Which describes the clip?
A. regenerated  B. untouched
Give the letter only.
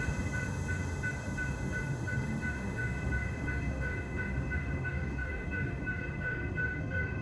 A